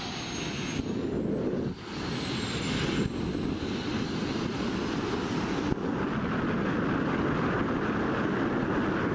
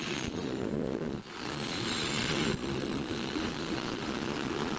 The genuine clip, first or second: first